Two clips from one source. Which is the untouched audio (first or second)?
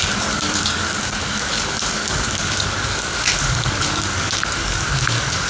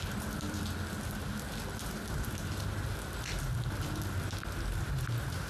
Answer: second